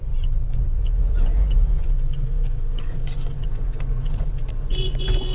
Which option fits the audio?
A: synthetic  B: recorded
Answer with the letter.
A